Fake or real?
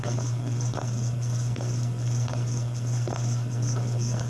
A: fake